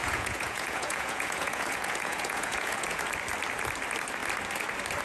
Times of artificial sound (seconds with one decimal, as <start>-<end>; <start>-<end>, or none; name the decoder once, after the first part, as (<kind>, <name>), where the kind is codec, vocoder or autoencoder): 0.0-3.0 (vocoder, Vocos)